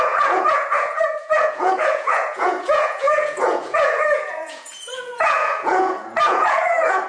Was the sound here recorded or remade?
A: remade